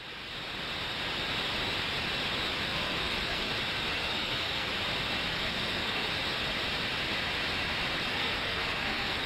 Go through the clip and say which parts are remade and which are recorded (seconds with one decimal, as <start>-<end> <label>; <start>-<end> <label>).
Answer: 0.0-2.7 recorded; 2.7-3.5 remade; 3.5-4.0 recorded; 4.0-4.7 remade; 4.7-5.3 recorded; 5.3-6.1 remade; 6.1-8.1 recorded; 8.1-9.3 remade